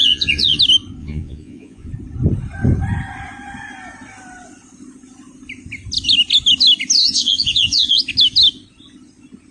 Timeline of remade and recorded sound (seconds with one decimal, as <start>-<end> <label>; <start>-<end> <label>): 0.0-0.6 remade; 0.6-1.0 recorded; 1.0-1.9 remade; 1.9-7.0 recorded; 7.0-8.0 remade; 8.0-9.5 recorded